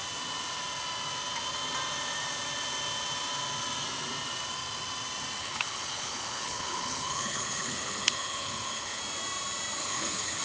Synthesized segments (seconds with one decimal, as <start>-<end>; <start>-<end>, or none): 5.4-9.0; 9.8-10.4